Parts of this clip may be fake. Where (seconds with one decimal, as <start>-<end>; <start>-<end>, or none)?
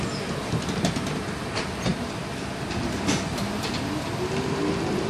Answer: none